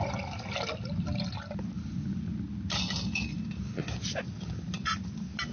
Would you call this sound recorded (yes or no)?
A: yes